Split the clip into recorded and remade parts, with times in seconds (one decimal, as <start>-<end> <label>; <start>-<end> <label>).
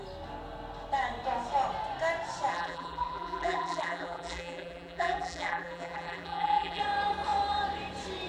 0.0-2.5 recorded; 2.5-6.8 remade; 6.8-8.3 recorded